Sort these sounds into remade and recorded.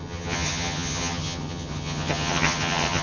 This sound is remade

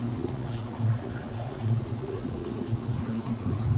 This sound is remade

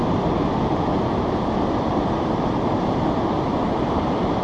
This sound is recorded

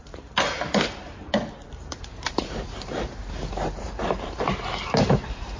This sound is remade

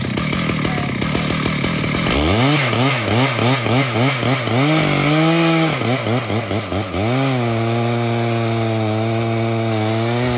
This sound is recorded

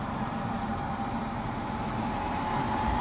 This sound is remade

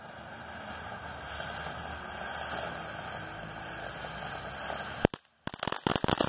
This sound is recorded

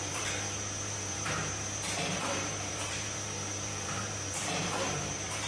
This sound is remade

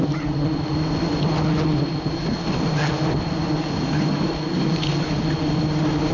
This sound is recorded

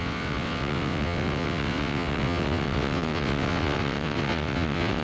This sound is remade